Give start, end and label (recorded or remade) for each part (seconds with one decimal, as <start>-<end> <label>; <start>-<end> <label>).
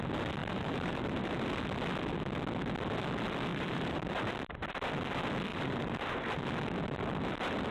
0.0-0.4 recorded; 0.4-1.3 remade; 1.3-3.5 recorded; 3.5-4.0 remade; 4.0-5.5 recorded; 5.5-6.4 remade; 6.4-7.7 recorded